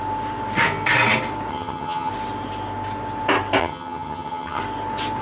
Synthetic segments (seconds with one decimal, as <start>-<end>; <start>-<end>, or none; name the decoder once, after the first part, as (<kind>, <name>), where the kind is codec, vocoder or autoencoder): 1.5-2.1 (vocoder, HiFi-GAN); 3.6-4.6